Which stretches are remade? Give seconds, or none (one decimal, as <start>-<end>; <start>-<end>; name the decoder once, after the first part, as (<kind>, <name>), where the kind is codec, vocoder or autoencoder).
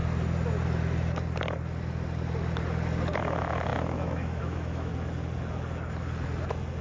3.2-4.9 (autoencoder, DAC-VAE)